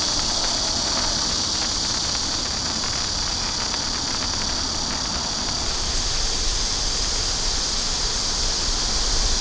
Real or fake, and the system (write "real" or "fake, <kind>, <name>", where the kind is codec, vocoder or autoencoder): real